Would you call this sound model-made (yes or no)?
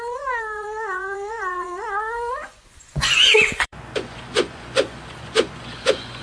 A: yes